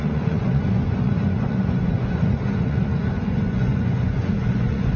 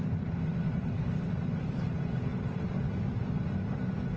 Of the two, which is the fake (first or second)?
first